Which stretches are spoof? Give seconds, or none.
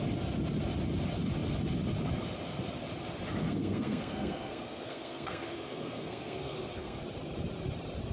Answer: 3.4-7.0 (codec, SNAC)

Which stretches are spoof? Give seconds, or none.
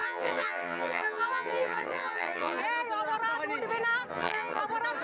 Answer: 0.0-2.6 (vocoder, HiFi-GAN); 4.1-4.6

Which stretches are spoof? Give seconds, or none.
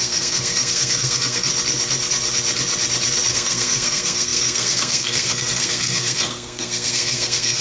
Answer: 0.0-1.5 (codec, SNAC); 3.3-7.6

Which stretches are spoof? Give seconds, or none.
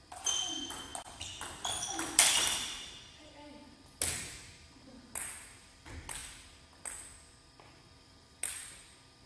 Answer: none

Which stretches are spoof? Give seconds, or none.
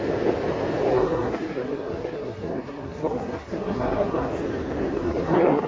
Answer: 0.9-4.3 (codec, SNAC); 4.9-5.7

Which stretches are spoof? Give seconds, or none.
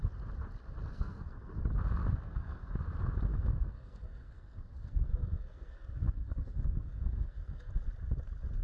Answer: 0.9-1.6 (codec, SNAC); 2.0-2.7; 3.3-7.7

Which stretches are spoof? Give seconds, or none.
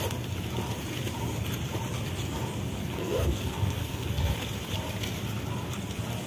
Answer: 2.8-4.3 (codec, SNAC)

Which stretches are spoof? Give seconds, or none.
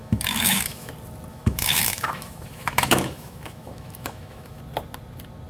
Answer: 0.0-0.9 (autoencoder, DAC-VAE); 1.3-4.6